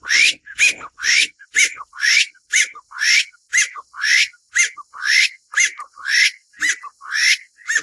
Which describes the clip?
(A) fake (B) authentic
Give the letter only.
B